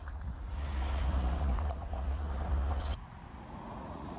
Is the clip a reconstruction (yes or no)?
yes